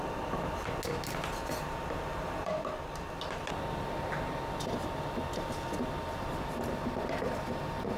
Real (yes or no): yes